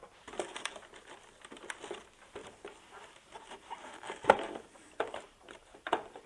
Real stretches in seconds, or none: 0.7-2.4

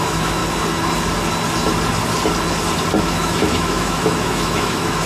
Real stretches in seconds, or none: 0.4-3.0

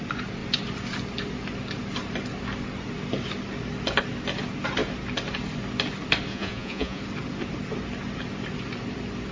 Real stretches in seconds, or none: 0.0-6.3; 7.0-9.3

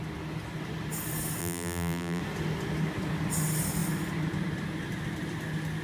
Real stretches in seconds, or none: 0.0-1.4; 2.2-5.8

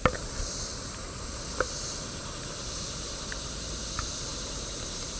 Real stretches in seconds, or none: 0.0-4.3

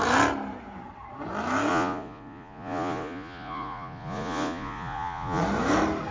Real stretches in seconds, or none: 0.0-1.7; 5.4-6.1

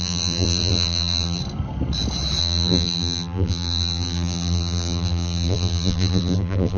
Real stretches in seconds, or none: 1.4-2.4

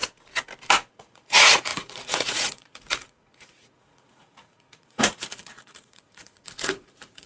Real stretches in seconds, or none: 0.0-0.9